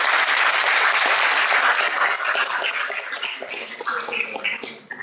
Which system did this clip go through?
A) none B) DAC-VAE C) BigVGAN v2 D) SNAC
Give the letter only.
A